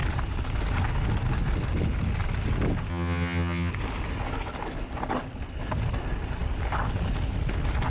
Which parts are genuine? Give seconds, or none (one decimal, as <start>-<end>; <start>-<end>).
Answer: 0.0-2.9; 3.7-7.9